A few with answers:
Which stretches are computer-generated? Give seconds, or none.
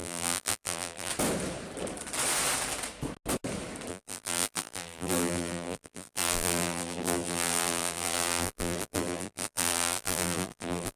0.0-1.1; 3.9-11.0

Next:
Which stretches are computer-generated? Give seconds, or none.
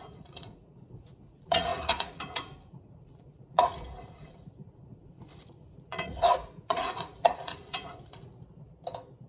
0.0-8.3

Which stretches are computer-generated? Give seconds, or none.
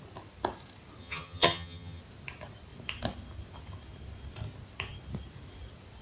1.0-2.0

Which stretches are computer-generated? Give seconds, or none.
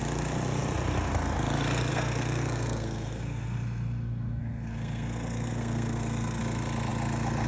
1.9-6.4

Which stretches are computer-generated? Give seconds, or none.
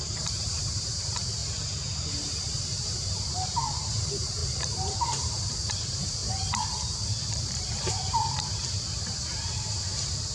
0.0-1.4; 2.1-6.2; 7.3-10.3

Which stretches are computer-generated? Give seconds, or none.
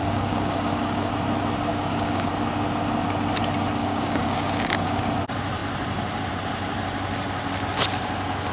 0.0-1.1; 1.7-2.3; 3.8-5.1